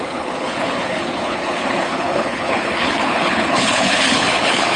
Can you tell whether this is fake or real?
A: fake